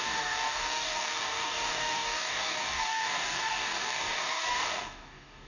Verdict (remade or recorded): remade